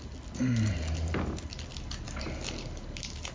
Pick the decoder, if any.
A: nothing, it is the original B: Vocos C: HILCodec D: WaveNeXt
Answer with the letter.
A